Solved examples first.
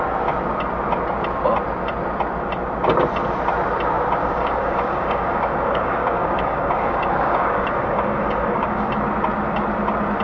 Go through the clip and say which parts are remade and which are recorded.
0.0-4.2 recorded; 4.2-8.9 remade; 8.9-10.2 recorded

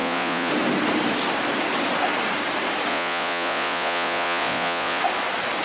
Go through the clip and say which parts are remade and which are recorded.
0.0-0.5 remade; 0.5-2.9 recorded; 2.9-5.0 remade; 5.0-5.6 recorded

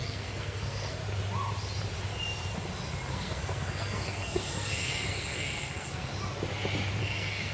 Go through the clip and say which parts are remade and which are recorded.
0.0-1.0 remade; 1.0-3.1 recorded; 3.1-6.1 remade; 6.1-7.0 recorded; 7.0-7.5 remade